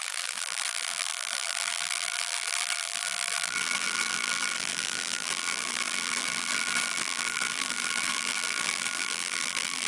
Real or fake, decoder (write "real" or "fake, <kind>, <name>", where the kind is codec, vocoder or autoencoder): fake, vocoder, BigVGAN v2